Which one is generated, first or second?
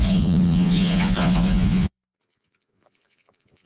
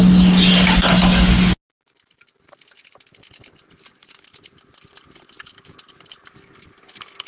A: first